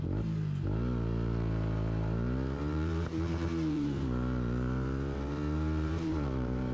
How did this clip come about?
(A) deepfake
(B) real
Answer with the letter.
A